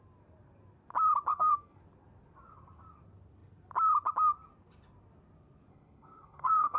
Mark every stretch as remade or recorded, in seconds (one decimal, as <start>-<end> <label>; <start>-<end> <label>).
0.0-1.3 recorded; 1.3-1.8 remade; 1.8-5.7 recorded; 5.7-6.8 remade